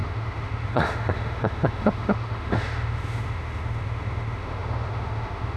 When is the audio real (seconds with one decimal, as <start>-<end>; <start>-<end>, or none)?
none

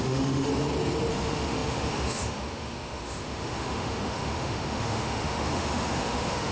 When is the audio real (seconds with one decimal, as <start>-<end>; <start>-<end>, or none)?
0.5-1.1

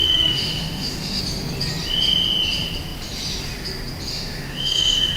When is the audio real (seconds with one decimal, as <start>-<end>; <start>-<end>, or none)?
1.2-4.1

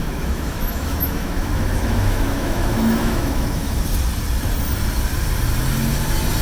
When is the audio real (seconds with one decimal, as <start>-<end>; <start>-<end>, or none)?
3.8-6.4

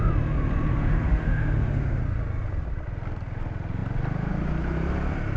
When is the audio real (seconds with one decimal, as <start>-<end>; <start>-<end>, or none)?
0.0-0.7; 2.0-5.4

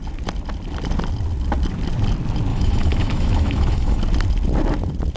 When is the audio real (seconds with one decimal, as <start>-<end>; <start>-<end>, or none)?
0.0-2.5; 4.0-5.2

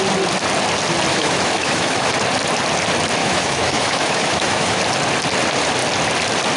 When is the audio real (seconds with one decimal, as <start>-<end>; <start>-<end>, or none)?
0.0-1.1; 2.1-3.2; 4.8-6.6